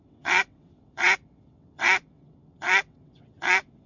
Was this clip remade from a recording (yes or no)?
yes